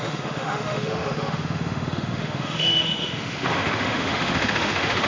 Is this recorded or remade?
remade